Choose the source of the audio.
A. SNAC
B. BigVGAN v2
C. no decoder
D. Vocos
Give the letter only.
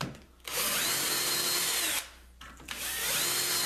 C